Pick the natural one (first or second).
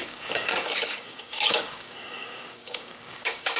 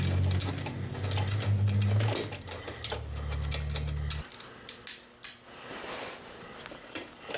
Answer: second